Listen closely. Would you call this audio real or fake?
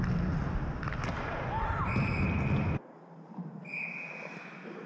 real